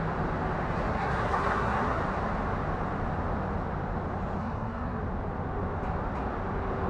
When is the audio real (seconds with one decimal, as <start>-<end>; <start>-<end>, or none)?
0.0-0.9; 2.0-4.4; 5.0-6.9

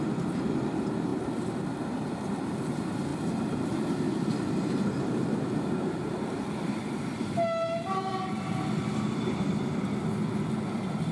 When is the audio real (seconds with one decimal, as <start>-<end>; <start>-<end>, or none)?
0.0-11.1